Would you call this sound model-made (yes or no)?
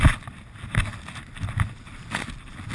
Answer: no